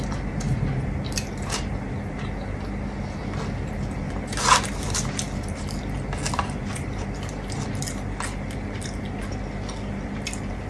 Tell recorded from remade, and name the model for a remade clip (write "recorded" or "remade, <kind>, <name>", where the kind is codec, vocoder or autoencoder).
recorded